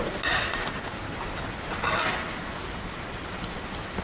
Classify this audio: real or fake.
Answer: real